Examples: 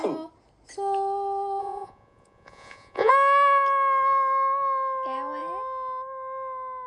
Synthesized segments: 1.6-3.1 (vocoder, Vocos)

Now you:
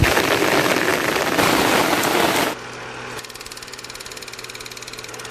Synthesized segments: none